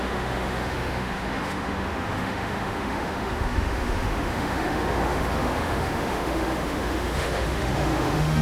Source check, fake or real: fake